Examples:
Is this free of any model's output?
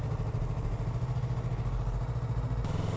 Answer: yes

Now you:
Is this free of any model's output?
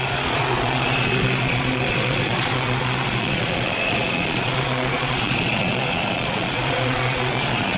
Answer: no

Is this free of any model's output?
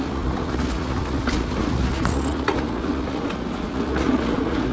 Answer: no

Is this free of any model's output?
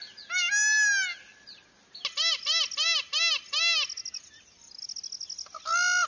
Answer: yes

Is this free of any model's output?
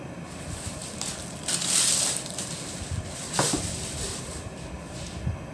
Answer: yes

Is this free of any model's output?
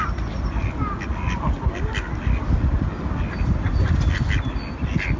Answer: yes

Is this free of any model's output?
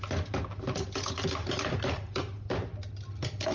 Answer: yes